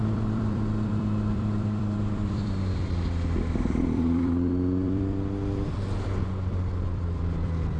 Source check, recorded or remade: remade